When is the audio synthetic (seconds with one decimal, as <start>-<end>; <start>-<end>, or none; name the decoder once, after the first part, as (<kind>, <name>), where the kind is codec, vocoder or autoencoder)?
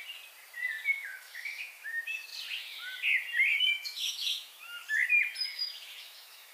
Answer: 0.9-2.3 (autoencoder, DAC-VAE); 3.6-4.8; 5.5-6.5